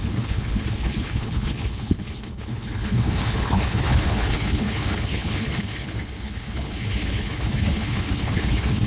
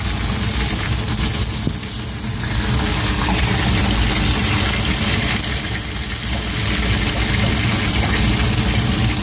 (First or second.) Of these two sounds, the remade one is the first